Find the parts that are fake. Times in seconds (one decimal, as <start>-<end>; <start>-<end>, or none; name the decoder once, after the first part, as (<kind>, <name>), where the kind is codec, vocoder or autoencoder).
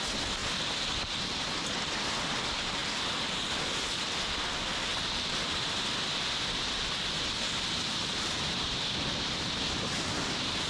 2.8-3.4 (vocoder, BigVGAN v2)